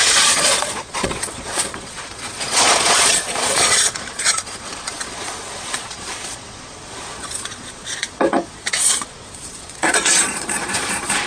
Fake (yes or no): yes